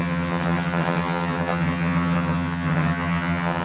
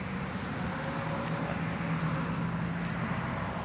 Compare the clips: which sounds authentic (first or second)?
second